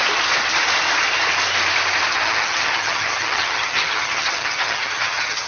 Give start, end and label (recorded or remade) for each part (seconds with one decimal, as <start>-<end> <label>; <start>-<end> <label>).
0.0-2.1 recorded; 2.1-5.5 remade